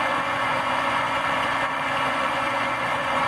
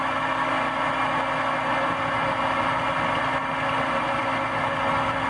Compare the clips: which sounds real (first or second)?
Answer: second